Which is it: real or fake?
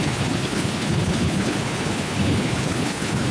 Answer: fake